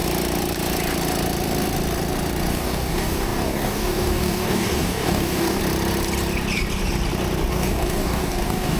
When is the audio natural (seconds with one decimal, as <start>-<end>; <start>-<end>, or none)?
0.0-2.5; 5.6-7.5